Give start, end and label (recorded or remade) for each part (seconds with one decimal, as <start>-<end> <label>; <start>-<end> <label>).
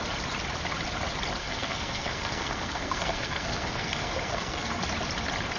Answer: 0.0-1.4 recorded; 1.4-4.8 remade; 4.8-5.6 recorded